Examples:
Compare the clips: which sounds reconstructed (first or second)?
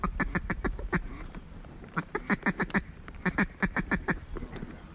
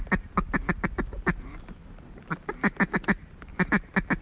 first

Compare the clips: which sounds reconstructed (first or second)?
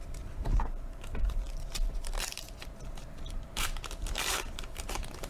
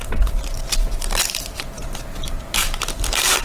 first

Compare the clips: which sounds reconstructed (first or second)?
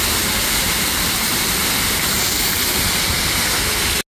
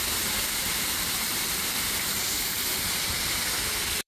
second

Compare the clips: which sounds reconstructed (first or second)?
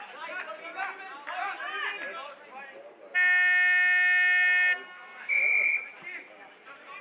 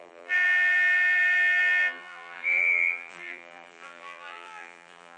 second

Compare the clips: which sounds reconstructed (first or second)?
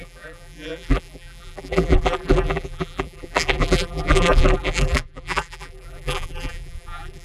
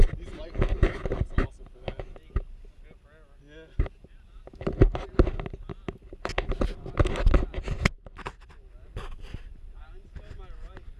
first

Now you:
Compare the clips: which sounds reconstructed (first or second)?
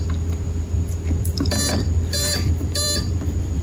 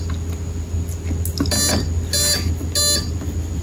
first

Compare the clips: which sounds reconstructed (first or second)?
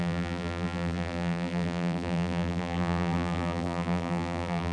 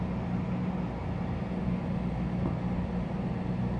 first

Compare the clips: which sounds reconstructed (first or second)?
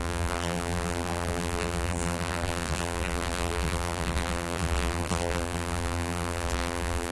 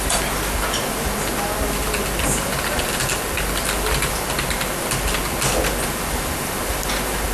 first